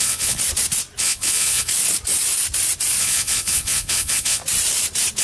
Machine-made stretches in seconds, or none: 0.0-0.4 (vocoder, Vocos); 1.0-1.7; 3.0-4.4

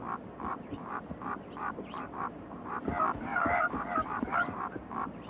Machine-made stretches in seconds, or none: 0.5-2.8 (vocoder, BigVGAN v2); 3.3-5.3